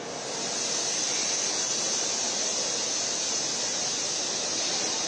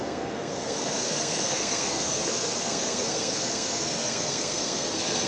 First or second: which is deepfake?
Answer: second